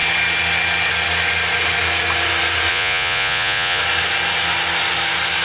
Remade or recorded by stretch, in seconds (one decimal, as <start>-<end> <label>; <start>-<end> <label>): 0.0-2.7 recorded; 2.7-3.8 remade; 3.8-5.4 recorded